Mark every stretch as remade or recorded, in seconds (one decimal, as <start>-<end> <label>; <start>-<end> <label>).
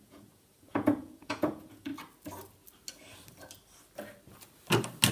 0.0-1.9 remade; 1.9-5.1 recorded